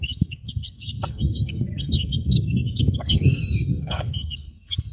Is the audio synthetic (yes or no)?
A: yes